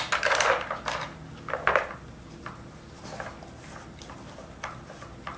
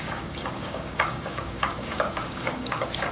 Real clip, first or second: first